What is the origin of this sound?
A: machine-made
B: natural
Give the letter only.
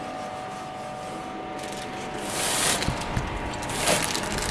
B